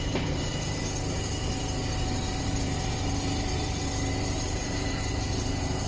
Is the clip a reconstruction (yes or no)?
yes